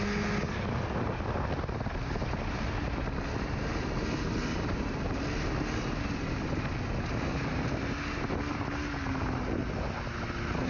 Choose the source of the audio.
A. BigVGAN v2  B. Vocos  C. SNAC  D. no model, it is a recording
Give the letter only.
D